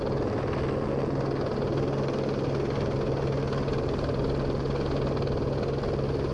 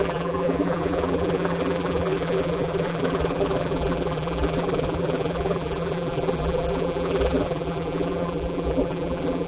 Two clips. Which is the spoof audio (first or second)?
second